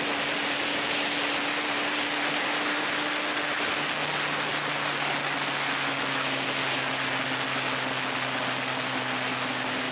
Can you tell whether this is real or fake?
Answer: real